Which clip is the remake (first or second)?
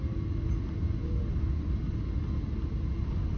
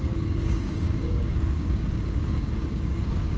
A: second